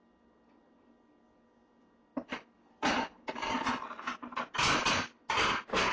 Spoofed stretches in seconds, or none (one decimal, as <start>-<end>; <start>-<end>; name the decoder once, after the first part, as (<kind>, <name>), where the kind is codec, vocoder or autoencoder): none